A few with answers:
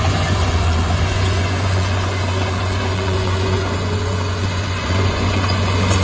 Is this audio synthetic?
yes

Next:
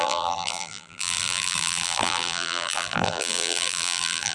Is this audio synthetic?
yes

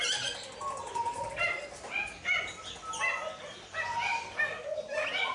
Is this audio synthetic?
no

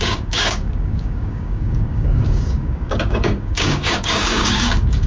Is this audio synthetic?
yes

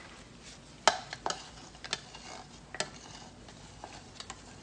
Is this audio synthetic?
no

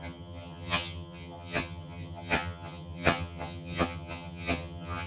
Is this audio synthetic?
yes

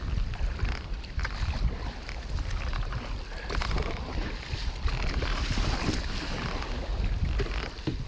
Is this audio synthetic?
no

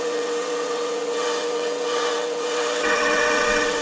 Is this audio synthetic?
yes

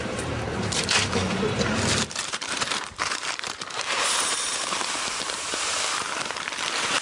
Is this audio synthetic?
yes